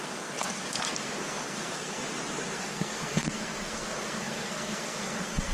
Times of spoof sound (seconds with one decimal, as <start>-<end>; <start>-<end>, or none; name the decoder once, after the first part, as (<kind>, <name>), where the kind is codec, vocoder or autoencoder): 0.0-2.0 (codec, SNAC); 2.5-5.5